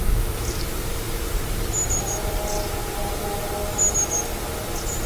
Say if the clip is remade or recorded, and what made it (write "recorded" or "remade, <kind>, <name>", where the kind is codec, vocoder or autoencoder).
recorded